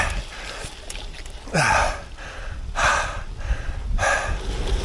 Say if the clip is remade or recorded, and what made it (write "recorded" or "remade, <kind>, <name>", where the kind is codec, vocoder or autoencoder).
recorded